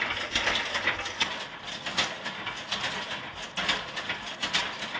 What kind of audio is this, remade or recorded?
recorded